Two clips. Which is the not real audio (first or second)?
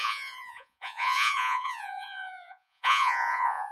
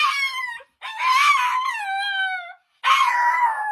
first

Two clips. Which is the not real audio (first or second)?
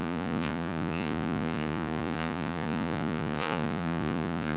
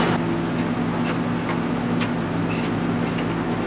first